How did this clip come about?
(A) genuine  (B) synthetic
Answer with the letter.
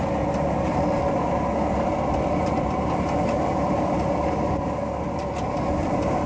A